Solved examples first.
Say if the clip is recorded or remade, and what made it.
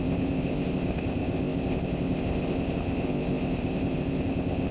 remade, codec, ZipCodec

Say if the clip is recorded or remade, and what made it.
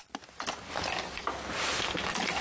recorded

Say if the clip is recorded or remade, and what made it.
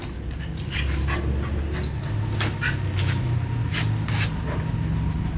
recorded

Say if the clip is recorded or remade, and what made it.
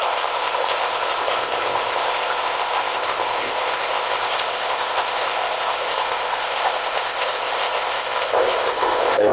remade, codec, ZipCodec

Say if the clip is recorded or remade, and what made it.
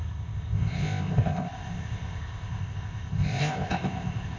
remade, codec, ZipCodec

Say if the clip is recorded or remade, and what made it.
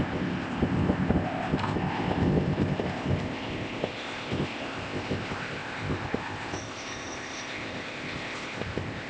remade, codec, ZipCodec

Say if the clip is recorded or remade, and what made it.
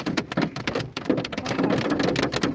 recorded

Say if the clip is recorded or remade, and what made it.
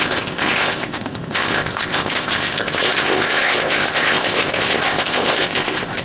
remade, codec, ZipCodec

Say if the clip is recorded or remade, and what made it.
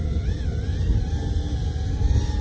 recorded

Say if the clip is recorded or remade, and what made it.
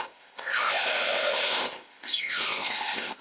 remade, codec, ZipCodec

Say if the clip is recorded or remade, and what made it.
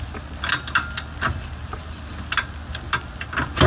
recorded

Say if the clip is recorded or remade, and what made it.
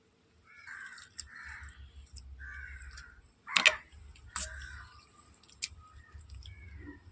recorded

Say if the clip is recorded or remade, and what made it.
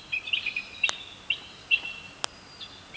recorded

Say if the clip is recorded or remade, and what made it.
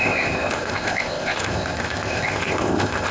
remade, codec, ZipCodec